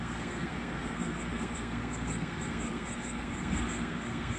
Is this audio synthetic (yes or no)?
yes